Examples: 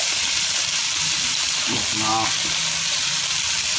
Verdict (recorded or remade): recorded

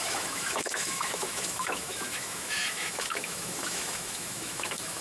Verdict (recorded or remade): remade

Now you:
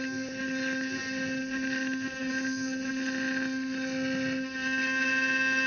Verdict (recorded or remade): recorded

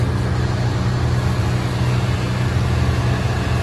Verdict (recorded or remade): recorded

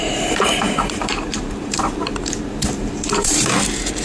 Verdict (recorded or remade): remade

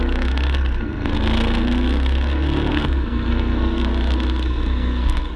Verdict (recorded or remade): remade